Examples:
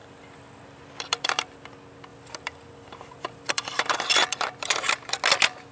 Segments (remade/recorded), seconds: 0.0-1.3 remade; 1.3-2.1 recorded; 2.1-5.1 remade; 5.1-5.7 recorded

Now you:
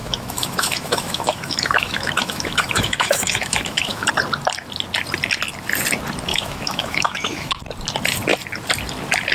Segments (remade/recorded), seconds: 0.0-4.1 remade; 4.1-6.3 recorded; 6.3-7.6 remade; 7.6-9.3 recorded